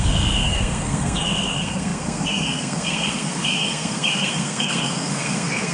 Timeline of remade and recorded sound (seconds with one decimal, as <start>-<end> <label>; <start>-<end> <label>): 0.0-5.7 remade